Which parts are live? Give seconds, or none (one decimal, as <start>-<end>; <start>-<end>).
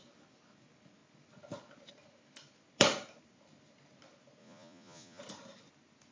0.0-4.4; 5.2-6.1